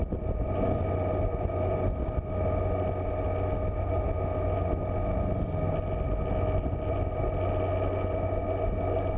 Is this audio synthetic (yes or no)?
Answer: no